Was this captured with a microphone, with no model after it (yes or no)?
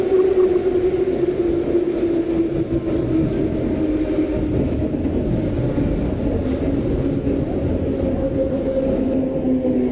yes